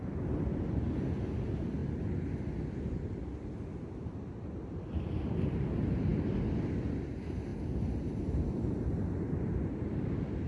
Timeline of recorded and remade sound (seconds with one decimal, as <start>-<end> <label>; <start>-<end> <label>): 0.0-10.5 recorded